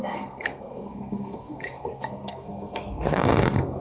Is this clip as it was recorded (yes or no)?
no